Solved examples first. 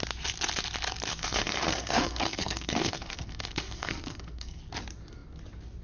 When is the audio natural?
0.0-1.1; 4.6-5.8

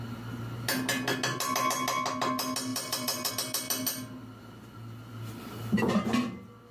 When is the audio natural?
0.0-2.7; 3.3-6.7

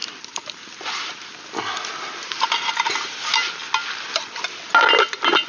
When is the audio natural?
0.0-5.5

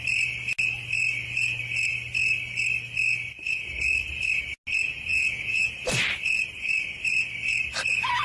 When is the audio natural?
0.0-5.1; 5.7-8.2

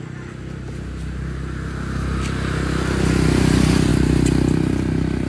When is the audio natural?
0.0-5.3

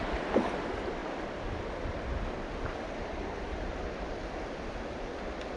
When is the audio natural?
0.0-5.6